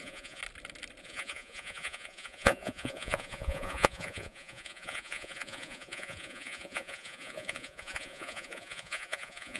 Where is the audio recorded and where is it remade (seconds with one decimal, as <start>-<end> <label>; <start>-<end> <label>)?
0.0-0.4 remade; 0.4-1.0 recorded; 1.0-9.6 remade